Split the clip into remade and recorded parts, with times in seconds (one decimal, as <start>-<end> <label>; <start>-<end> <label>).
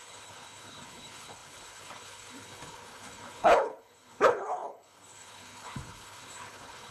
0.0-6.9 remade